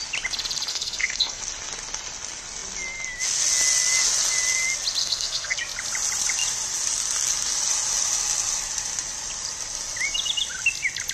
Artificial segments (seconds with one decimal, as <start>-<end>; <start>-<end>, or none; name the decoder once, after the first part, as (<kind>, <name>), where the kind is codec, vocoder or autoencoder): 0.7-1.4 (codec, SNAC); 5.0-5.6